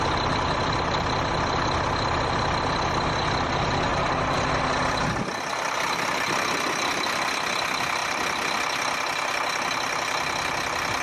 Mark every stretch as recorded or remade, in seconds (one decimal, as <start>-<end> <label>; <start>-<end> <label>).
0.0-3.9 recorded; 3.9-4.5 remade; 4.5-8.0 recorded; 8.0-8.5 remade; 8.5-11.0 recorded